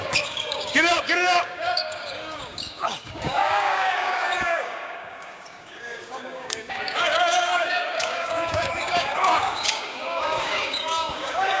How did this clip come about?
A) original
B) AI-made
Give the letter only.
B